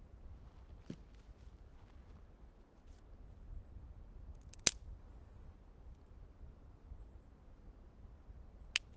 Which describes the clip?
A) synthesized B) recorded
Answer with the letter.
B